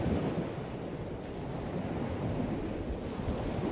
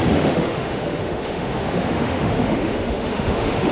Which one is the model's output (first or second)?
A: second